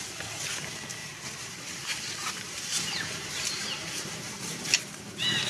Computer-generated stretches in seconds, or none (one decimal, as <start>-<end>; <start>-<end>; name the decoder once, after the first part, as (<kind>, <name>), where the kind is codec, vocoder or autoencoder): 1.0-4.3 (vocoder, BigVGAN v2)